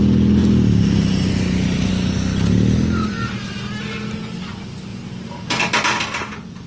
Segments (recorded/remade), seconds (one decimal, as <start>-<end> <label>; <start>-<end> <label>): 0.0-0.4 recorded; 0.4-1.9 remade; 1.9-4.9 recorded; 4.9-6.0 remade; 6.0-6.7 recorded